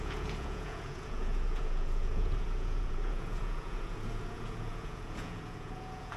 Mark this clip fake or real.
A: fake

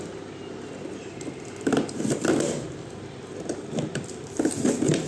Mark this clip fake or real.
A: real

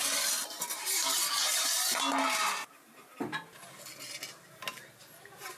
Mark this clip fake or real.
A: real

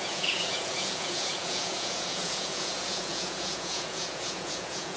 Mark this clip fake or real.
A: fake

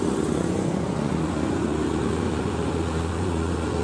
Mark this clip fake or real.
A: fake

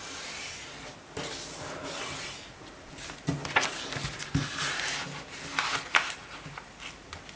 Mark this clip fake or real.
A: real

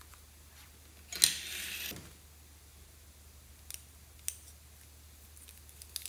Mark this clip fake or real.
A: real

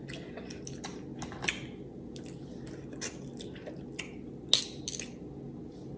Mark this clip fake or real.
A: real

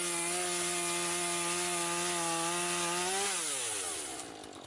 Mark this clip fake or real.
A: real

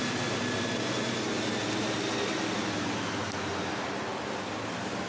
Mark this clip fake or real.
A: real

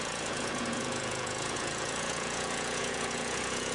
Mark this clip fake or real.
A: fake